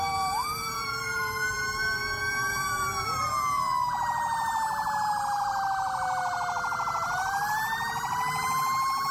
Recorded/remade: remade